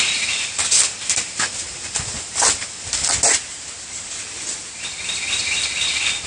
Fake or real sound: real